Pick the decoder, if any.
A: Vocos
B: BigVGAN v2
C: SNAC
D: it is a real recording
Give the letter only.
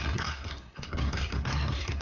C